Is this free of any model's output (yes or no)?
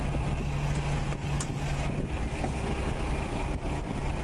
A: yes